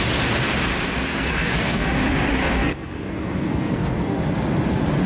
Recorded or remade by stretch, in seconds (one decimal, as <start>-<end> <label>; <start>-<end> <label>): 0.0-1.1 recorded; 1.1-1.9 remade; 1.9-2.4 recorded; 2.4-4.2 remade; 4.2-5.1 recorded

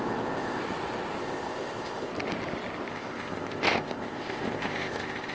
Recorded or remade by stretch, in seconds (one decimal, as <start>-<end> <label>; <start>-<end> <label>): 0.0-0.6 remade; 0.6-1.2 recorded; 1.2-2.1 remade; 2.1-2.9 recorded; 2.9-5.3 remade

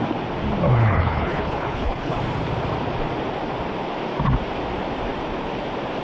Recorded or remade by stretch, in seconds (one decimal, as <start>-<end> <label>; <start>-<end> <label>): 0.0-0.8 recorded; 0.8-2.2 remade; 2.2-6.0 recorded

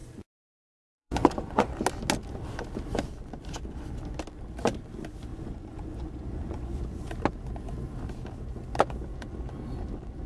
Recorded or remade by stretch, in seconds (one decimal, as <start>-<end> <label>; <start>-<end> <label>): 0.0-1.7 remade; 1.7-5.3 recorded; 5.3-6.8 remade; 6.8-10.3 recorded